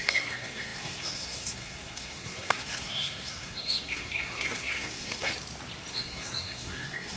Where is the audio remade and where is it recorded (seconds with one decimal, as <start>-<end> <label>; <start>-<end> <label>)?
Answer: 0.0-5.3 remade; 5.3-5.9 recorded; 5.9-7.2 remade